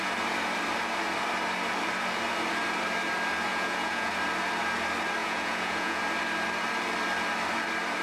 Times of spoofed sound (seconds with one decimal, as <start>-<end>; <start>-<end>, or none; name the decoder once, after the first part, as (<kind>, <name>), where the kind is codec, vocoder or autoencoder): 3.5-4.1 (vocoder, Vocos); 5.2-6.0